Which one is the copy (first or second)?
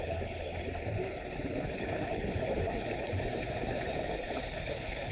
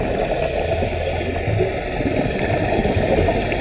first